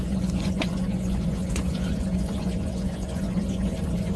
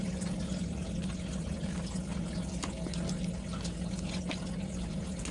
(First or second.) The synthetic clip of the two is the first